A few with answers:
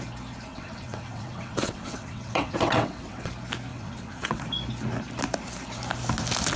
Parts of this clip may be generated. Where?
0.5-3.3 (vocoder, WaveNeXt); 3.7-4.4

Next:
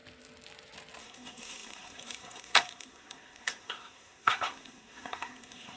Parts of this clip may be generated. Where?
1.0-5.8 (codec, SNAC)

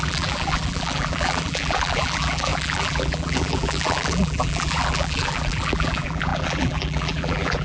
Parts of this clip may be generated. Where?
0.0-7.6 (vocoder, BigVGAN v2)